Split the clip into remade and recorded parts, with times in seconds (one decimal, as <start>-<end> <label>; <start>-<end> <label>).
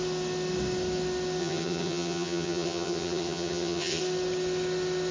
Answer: 0.0-1.4 recorded; 1.4-4.0 remade; 4.0-5.1 recorded